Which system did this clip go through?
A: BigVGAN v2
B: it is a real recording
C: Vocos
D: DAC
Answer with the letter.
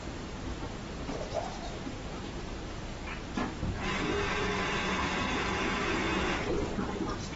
B